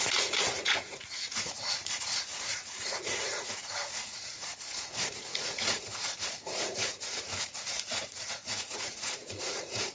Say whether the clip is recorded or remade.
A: remade